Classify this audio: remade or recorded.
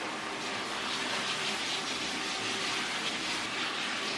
recorded